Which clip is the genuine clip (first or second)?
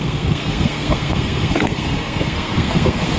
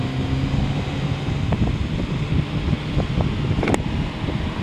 second